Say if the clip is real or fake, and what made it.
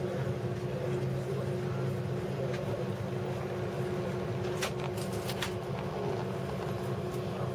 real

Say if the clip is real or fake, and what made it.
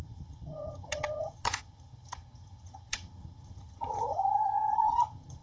fake, vocoder, HiFi-GAN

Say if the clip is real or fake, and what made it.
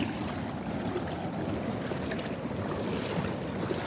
real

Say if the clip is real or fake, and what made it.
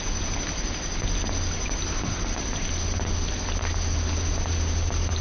real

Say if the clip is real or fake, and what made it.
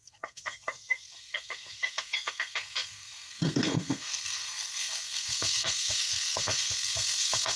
fake, codec, SNAC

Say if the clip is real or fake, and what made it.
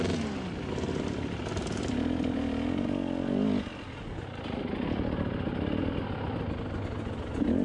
real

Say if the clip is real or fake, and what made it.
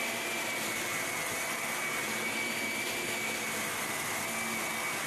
real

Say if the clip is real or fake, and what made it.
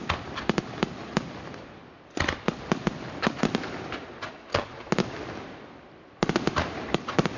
real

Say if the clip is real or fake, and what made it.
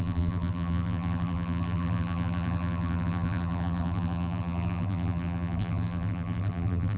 fake, vocoder, BigVGAN v2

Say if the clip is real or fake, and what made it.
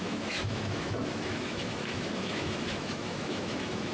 fake, autoencoder, DAC-VAE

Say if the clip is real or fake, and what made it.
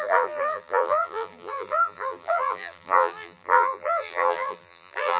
fake, vocoder, BigVGAN v2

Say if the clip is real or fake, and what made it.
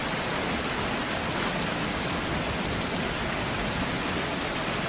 real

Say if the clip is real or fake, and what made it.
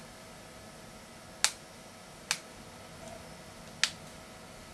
real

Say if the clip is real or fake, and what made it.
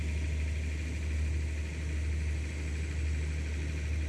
real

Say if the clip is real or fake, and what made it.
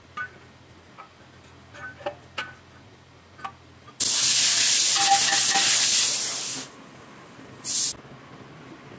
real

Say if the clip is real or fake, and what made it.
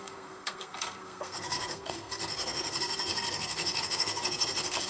fake, codec, SNAC